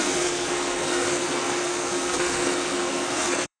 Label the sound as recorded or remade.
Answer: remade